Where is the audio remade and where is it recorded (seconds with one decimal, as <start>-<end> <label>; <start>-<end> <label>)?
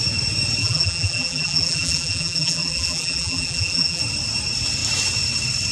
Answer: 0.0-0.6 recorded; 0.6-4.0 remade; 4.0-5.7 recorded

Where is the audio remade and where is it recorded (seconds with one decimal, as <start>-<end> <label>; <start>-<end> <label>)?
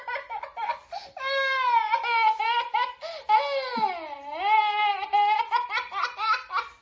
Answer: 0.0-6.8 recorded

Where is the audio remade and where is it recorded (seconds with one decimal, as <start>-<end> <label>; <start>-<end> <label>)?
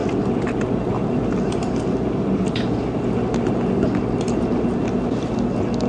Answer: 0.0-5.9 recorded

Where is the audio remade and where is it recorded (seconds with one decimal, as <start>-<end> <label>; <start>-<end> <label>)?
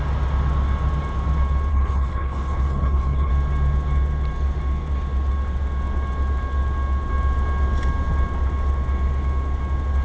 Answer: 0.0-1.7 recorded; 1.7-3.3 remade; 3.3-10.0 recorded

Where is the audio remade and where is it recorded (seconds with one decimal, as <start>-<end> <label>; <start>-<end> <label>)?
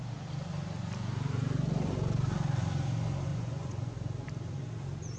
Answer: 0.0-3.3 recorded; 3.3-3.9 remade; 3.9-5.2 recorded